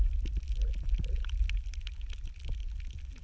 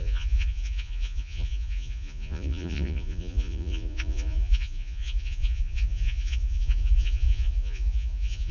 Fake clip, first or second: second